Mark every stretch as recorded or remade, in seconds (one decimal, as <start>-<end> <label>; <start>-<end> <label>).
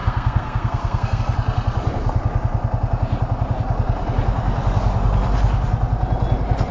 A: 0.0-1.2 remade; 1.2-6.7 recorded